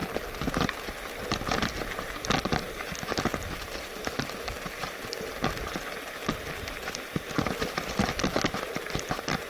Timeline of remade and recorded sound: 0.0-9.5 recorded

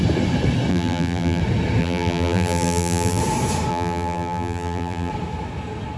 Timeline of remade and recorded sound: 0.0-0.7 recorded; 0.7-1.4 remade; 1.4-1.8 recorded; 1.8-3.2 remade; 3.2-3.7 recorded; 3.7-5.1 remade; 5.1-6.0 recorded

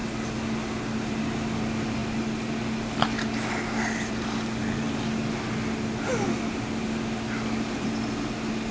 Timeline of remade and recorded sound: 0.0-1.2 recorded; 1.2-8.7 remade

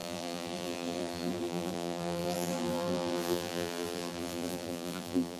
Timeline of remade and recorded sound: 0.0-5.4 remade

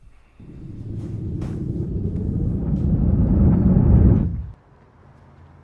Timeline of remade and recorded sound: 0.0-4.3 recorded; 4.3-5.0 remade; 5.0-5.6 recorded

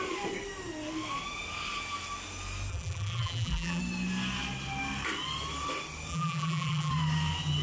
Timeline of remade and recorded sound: 0.0-2.7 recorded; 2.7-3.8 remade; 3.8-6.1 recorded; 6.1-6.9 remade; 6.9-7.6 recorded

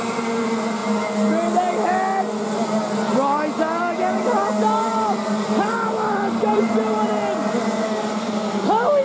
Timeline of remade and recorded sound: 0.0-4.9 recorded; 4.9-6.9 remade; 6.9-9.0 recorded

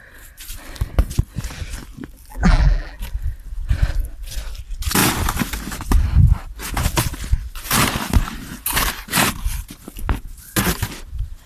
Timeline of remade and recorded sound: 0.0-2.3 recorded; 2.3-3.0 remade; 3.0-11.5 recorded